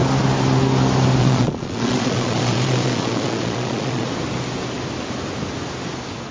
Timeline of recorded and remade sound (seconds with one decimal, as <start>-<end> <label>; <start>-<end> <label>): 0.0-1.2 recorded; 1.2-4.1 remade; 4.1-6.3 recorded